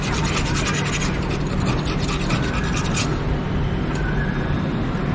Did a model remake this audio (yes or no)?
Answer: no